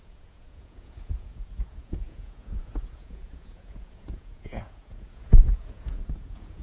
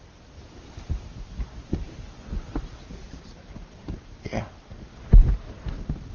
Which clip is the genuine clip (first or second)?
second